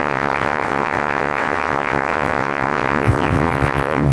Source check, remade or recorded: remade